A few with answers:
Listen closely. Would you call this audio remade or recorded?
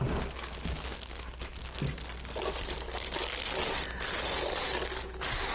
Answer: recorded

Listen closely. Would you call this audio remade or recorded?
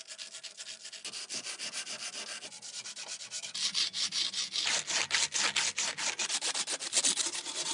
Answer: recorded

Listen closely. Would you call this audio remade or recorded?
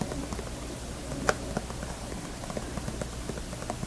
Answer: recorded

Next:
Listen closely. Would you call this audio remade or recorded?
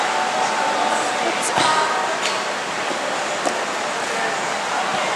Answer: recorded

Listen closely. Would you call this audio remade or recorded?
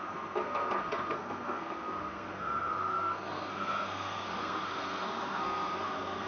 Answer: remade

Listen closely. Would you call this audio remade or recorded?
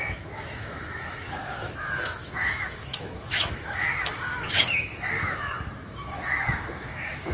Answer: remade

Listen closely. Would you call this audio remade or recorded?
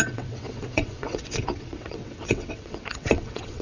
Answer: remade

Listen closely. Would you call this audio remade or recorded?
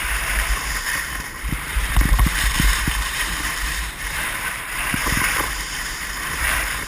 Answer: remade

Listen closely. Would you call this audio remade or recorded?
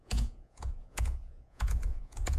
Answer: remade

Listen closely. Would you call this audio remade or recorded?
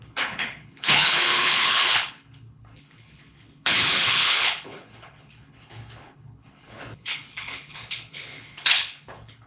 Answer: remade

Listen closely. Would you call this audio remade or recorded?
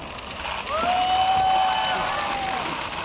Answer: recorded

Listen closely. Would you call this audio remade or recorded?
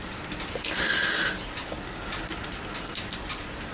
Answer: recorded